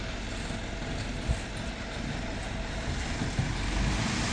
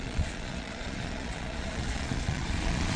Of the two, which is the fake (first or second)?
second